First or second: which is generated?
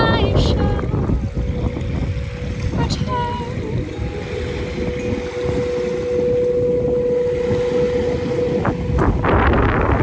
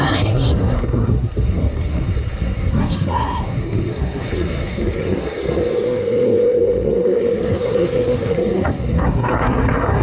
second